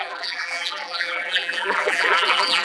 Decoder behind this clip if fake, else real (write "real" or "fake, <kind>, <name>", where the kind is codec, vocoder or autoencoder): fake, vocoder, BigVGAN v2